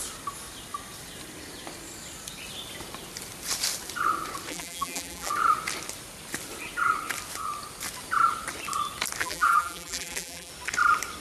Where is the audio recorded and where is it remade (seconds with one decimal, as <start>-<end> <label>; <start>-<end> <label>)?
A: 0.0-4.5 recorded; 4.5-5.3 remade; 5.3-9.2 recorded; 9.2-10.5 remade; 10.5-11.2 recorded